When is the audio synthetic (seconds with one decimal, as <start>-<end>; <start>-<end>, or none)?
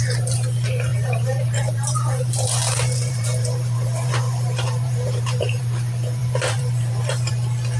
0.9-5.6; 6.2-7.3